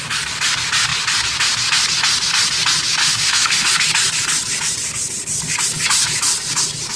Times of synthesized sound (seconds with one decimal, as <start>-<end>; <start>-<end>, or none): 3.0-3.7